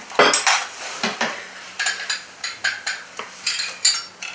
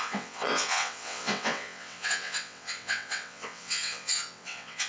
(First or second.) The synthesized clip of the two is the second